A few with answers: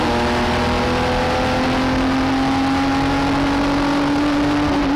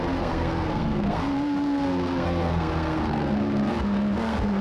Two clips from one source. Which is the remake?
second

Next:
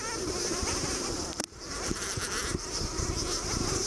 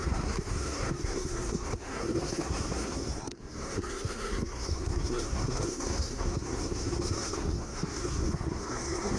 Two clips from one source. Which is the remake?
second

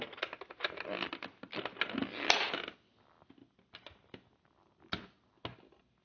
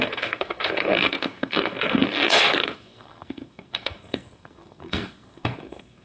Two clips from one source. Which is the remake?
second